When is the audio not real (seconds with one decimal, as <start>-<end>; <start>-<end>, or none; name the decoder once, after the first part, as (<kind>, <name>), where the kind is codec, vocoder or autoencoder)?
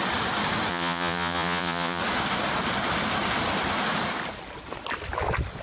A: 0.7-2.0 (vocoder, Vocos)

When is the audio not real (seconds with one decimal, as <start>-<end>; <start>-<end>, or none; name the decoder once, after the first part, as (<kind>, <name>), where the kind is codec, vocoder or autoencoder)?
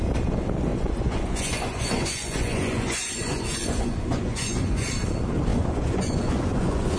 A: 0.7-4.9 (vocoder, Vocos); 5.5-7.0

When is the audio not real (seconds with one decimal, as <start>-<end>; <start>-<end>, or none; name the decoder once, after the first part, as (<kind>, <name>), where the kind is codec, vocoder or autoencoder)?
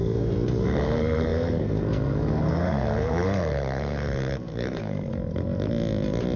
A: 0.0-5.1 (codec, SNAC)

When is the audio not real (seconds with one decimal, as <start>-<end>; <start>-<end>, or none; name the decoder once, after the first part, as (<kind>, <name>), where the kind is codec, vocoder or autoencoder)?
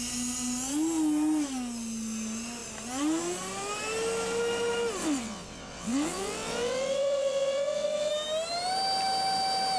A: 5.0-8.1 (vocoder, WaveNeXt)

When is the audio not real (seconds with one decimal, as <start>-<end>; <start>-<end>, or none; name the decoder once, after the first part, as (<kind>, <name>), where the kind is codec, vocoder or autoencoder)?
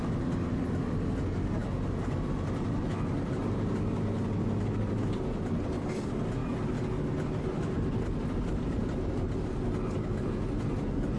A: none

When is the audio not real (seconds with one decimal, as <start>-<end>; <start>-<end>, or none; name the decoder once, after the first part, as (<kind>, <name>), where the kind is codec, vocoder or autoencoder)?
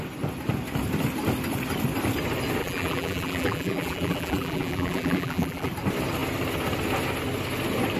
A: 2.6-5.7 (vocoder, BigVGAN v2)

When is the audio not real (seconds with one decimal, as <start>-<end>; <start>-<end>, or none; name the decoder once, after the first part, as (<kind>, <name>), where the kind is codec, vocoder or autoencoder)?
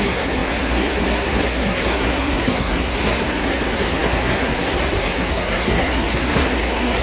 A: 0.0-7.0 (codec, SNAC)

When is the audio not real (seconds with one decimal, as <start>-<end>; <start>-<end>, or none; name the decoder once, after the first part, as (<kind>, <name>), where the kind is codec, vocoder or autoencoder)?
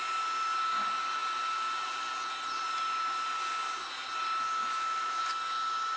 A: 4.6-5.2 (autoencoder, DAC-VAE)